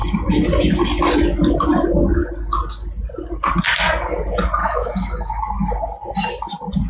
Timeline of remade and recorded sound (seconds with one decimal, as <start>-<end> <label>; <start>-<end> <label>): 0.0-4.6 recorded; 4.6-5.3 remade; 5.3-6.9 recorded